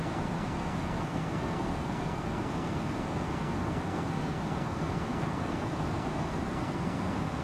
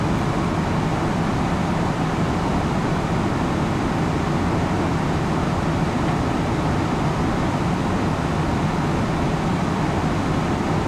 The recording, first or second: second